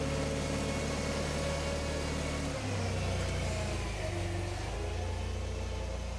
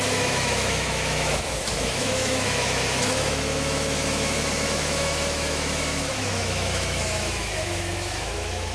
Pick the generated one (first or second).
second